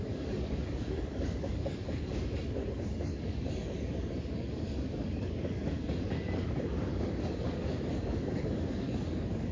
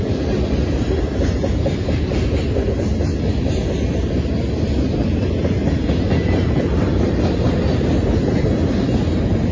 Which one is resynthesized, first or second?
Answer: first